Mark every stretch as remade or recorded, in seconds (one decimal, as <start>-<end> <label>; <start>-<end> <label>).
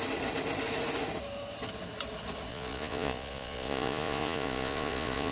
0.0-2.5 recorded; 2.5-5.3 remade